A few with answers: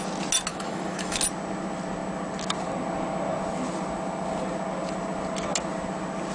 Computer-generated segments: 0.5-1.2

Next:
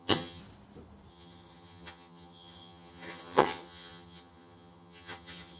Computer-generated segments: 0.0-0.4; 1.1-5.6

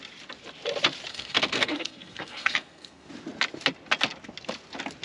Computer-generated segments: 1.1-3.1

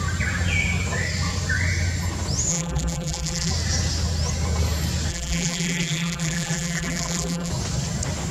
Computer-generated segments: 2.5-3.5; 5.1-7.5

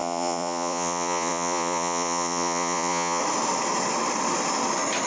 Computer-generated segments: 0.0-3.2

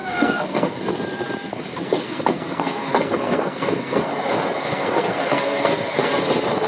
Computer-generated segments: 0.0-0.8; 1.5-4.1; 4.6-6.1

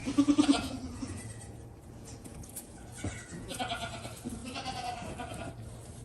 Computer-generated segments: 0.0-3.6

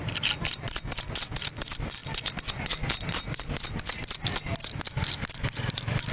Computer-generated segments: none